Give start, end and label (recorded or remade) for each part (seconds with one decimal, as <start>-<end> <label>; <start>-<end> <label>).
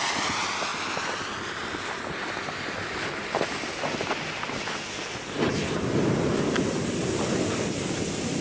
0.0-8.4 recorded